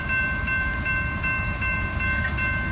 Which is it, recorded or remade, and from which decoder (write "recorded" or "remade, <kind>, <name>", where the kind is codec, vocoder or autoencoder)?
remade, vocoder, BigVGAN v2